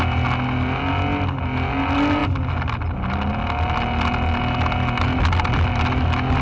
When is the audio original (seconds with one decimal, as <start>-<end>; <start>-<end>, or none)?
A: 0.0-6.4